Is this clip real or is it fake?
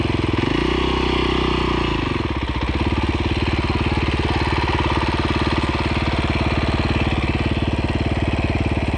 real